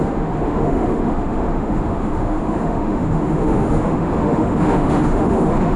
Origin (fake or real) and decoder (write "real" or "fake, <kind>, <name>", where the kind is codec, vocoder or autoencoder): fake, autoencoder, DAC-VAE